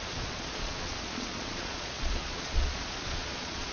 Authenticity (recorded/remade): remade